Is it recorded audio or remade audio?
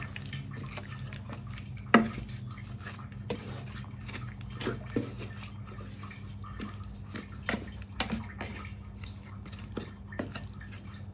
recorded